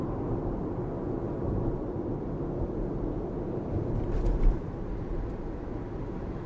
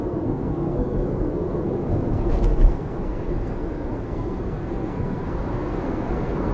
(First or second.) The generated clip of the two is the second